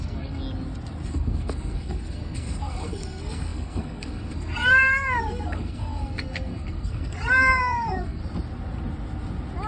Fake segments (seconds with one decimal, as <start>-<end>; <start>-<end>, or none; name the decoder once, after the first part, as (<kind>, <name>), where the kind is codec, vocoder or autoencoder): 0.0-0.4 (codec, SNAC); 1.1-8.2